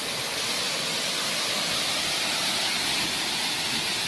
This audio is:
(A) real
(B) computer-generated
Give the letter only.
A